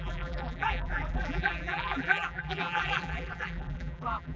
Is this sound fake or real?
fake